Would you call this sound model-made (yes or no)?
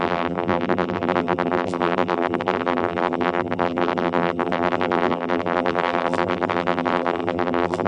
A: yes